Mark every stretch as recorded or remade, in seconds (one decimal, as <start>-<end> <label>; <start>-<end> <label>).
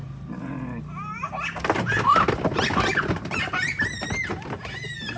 0.0-5.2 recorded